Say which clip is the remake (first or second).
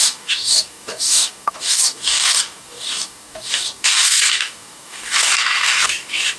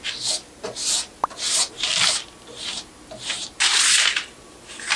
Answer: first